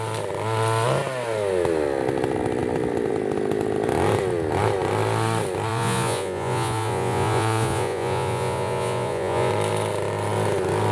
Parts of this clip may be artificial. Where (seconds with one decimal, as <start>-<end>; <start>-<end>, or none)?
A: 5.7-9.5